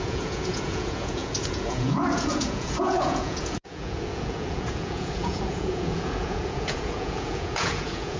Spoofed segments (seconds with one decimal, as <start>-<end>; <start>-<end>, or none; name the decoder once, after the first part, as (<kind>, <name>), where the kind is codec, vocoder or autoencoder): 0.0-8.2 (vocoder, Vocos)